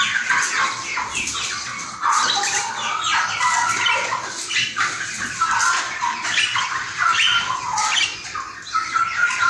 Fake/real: real